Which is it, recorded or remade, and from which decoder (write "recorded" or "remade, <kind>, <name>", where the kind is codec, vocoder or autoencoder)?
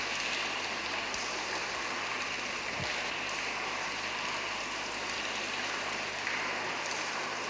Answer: recorded